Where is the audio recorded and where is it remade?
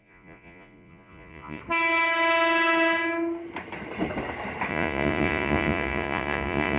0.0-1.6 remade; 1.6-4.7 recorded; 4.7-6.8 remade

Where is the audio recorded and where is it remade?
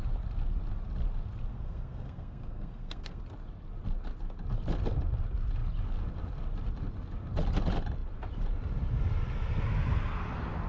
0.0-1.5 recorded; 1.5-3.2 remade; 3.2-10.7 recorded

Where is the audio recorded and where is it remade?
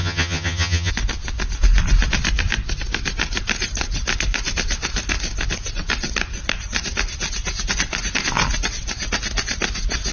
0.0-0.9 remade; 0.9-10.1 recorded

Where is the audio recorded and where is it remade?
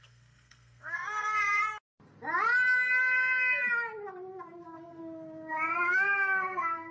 0.0-1.6 remade; 1.6-4.6 recorded; 4.6-5.0 remade; 5.0-5.5 recorded; 5.5-6.9 remade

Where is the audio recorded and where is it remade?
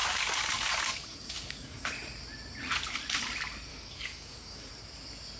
0.0-1.9 remade; 1.9-3.7 recorded; 3.7-4.7 remade; 4.7-5.4 recorded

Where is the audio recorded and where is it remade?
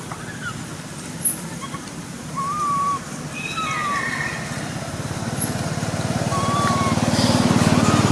0.0-8.1 recorded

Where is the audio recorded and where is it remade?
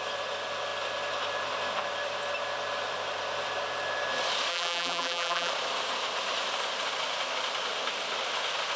0.0-4.5 recorded; 4.5-5.5 remade; 5.5-8.8 recorded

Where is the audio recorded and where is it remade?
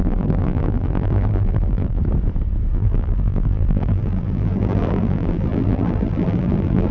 0.0-2.0 remade; 2.0-2.7 recorded; 2.7-6.9 remade